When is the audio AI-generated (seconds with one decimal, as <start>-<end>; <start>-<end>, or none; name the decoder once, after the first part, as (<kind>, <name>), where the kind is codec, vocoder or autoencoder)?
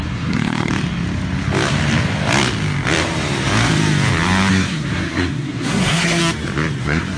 0.0-0.7 (codec, SNAC); 4.5-6.2; 6.8-7.2